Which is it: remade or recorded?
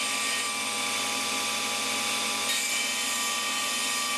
recorded